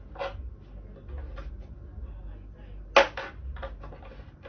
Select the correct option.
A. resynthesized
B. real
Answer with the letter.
B